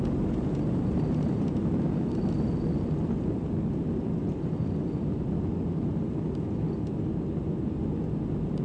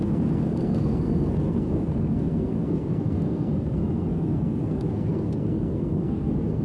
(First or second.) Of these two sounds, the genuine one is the first